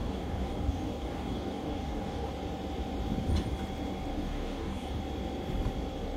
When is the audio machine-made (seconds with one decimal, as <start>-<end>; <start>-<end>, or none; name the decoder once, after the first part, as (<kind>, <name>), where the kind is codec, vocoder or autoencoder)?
0.0-2.3 (codec, DAC); 4.1-5.0